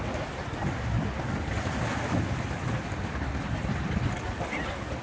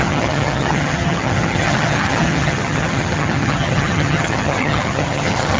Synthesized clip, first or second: second